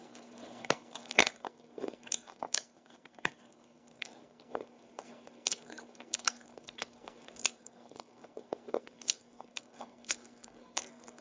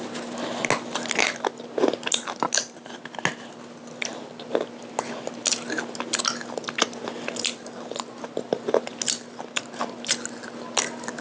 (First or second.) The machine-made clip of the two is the first